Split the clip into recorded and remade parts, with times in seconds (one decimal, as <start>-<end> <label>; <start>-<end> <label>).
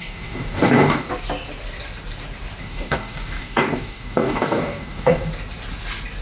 0.0-1.1 remade; 1.1-2.6 recorded; 2.6-5.3 remade; 5.3-6.2 recorded